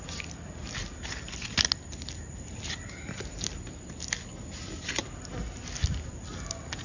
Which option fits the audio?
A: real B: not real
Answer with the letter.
A